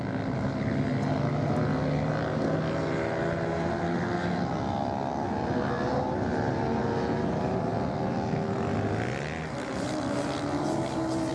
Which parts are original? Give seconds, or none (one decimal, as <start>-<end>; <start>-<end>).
0.0-11.3